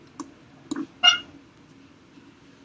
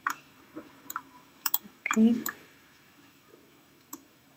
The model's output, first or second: second